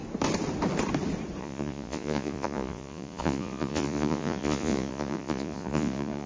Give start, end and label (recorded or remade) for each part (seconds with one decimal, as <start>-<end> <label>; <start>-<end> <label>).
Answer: 0.0-1.4 recorded; 1.4-6.3 remade